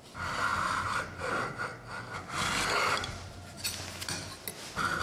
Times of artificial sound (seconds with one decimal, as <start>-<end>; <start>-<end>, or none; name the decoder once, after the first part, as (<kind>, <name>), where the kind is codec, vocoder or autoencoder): 0.0-1.7 (vocoder, BigVGAN v2)